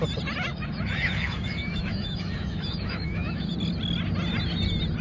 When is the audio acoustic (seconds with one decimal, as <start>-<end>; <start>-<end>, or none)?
0.0-0.5; 3.5-5.0